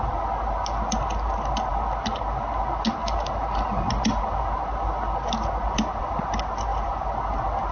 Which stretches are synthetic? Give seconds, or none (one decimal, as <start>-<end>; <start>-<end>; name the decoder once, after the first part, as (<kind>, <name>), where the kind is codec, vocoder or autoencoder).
none